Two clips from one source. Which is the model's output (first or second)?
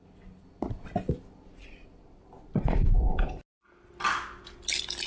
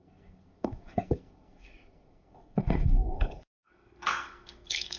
second